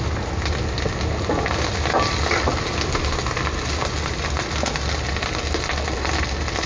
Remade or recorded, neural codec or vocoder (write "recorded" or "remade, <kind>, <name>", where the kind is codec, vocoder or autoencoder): recorded